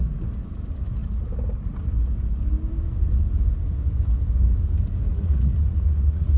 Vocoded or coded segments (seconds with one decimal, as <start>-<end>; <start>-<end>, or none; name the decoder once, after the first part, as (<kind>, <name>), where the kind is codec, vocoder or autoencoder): 5.1-6.4 (vocoder, Vocos)